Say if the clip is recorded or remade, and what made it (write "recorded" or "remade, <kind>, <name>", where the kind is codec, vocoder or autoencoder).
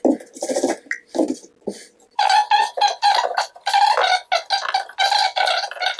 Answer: recorded